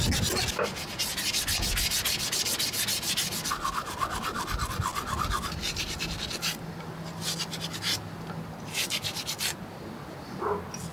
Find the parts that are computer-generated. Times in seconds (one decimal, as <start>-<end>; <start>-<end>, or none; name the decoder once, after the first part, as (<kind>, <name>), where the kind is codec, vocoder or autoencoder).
4.9-7.4 (vocoder, BigVGAN v2)